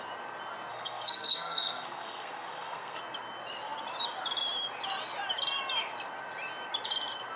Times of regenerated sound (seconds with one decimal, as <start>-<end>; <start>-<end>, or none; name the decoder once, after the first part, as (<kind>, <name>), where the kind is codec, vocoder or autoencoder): 0.7-3.0 (codec, SNAC)